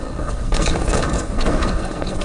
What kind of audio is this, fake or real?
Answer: fake